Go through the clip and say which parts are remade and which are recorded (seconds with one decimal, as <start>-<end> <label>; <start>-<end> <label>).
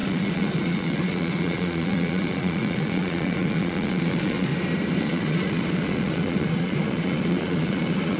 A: 0.0-4.5 remade; 4.5-5.0 recorded; 5.0-8.2 remade